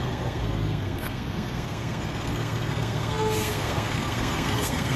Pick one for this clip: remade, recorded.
remade